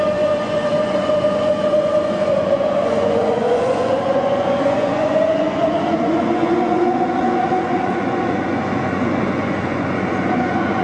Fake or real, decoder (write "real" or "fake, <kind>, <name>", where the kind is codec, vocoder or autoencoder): fake, vocoder, Vocos